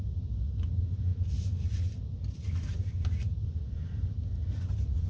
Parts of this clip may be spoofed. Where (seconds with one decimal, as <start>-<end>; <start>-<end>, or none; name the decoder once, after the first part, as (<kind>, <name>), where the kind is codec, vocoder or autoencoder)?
none